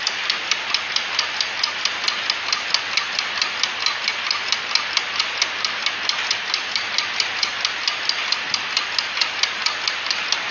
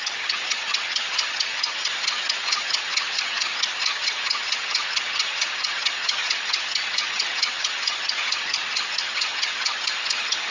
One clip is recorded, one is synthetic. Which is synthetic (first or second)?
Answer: second